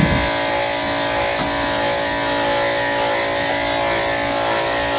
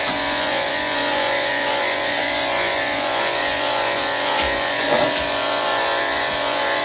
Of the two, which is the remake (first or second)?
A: second